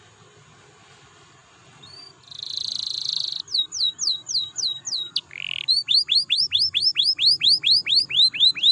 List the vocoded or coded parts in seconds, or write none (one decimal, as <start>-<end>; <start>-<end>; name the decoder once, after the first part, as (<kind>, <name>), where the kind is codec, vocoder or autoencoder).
none